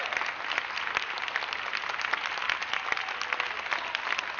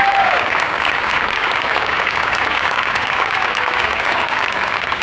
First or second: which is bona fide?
first